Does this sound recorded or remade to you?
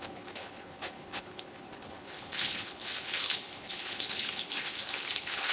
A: remade